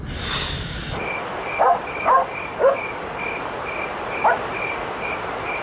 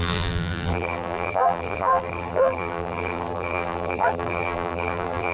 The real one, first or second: first